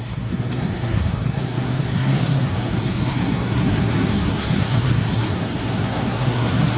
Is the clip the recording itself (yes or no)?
no